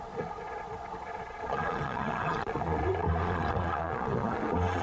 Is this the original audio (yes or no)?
no